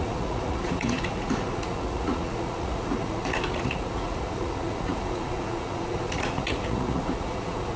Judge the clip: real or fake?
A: fake